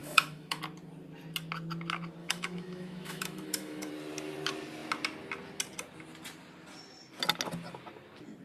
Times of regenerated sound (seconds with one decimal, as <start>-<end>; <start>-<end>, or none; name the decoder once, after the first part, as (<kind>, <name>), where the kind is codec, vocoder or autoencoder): 0.0-0.6 (autoencoder, DAC-VAE); 2.2-3.9